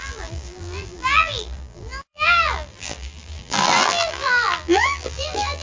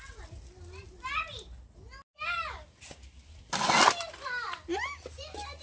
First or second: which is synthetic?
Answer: first